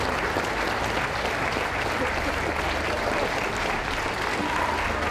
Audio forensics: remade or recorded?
recorded